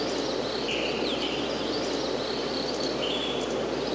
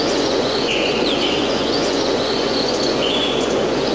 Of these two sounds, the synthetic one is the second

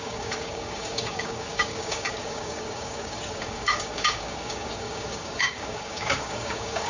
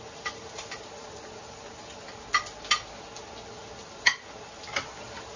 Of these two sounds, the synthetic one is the first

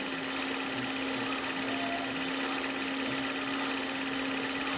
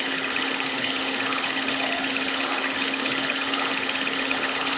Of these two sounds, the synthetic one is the second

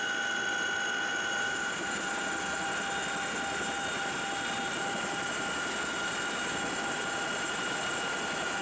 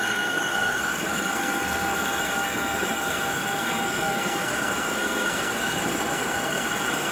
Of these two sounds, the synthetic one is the second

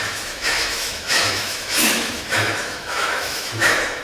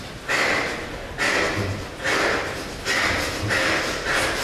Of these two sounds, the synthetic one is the first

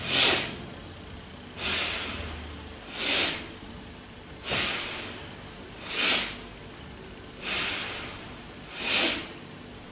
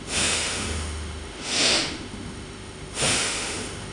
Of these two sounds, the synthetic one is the second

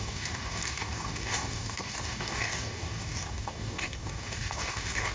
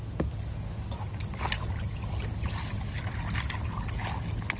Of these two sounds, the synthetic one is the first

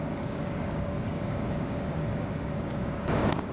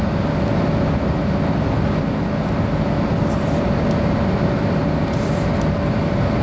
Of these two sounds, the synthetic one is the first